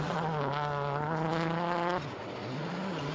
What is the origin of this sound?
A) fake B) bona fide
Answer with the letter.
B